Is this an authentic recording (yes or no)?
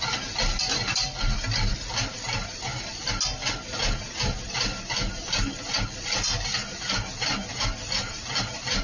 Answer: yes